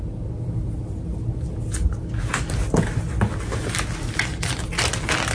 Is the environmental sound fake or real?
real